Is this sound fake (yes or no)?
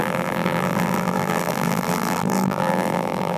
yes